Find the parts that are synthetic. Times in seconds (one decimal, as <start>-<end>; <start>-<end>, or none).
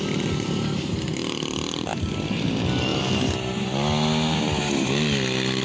none